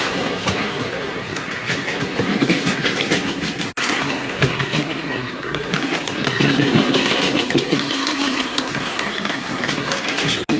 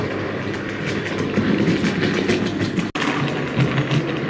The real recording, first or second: second